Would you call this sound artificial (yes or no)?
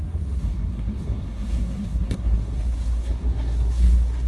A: yes